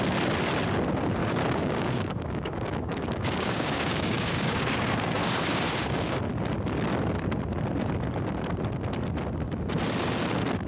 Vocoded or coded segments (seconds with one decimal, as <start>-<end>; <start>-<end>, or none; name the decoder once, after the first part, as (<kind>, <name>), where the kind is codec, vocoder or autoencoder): 1.2-6.2 (codec, DAC)